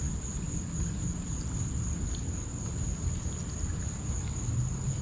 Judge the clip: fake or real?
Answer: real